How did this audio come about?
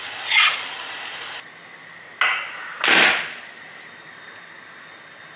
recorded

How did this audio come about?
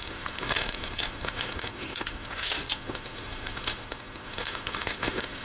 remade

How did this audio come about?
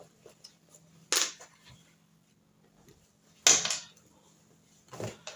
recorded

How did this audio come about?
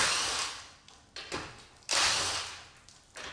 recorded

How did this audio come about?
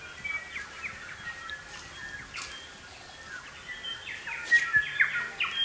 recorded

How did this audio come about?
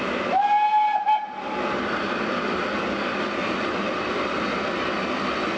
recorded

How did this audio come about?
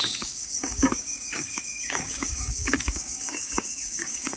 remade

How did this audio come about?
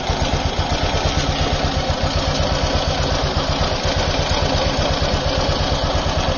recorded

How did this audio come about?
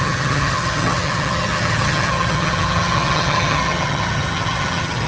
remade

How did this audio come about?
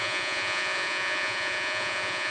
remade